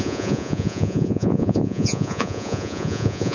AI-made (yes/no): yes